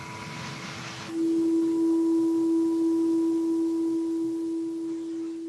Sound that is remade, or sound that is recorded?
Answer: recorded